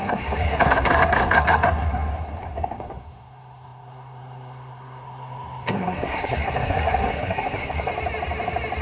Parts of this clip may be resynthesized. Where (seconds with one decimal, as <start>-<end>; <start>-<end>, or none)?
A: 0.0-7.9